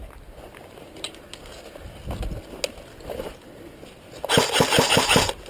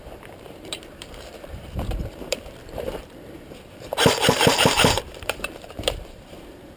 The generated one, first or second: second